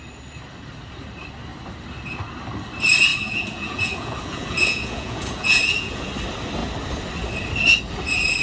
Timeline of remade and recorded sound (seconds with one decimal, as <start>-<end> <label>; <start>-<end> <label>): 0.0-3.1 recorded; 3.1-6.0 remade; 6.0-8.4 recorded